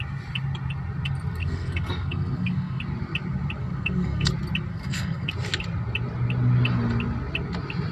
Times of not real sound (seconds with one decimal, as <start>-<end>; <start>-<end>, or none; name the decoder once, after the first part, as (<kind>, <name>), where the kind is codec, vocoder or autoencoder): 1.4-2.8 (codec, SNAC); 3.6-4.3; 4.7-5.3